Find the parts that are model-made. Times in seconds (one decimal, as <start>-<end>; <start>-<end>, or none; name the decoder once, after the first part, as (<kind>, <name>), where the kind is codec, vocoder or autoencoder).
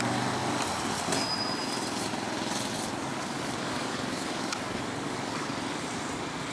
3.1-5.5 (codec, DAC)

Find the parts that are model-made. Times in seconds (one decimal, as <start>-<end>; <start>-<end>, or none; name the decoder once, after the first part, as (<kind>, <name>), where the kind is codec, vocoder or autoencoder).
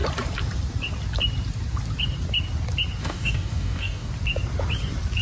3.0-4.1 (codec, DAC)